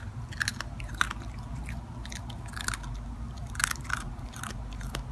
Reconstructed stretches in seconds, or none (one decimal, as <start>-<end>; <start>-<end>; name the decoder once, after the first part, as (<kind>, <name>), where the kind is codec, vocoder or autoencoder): none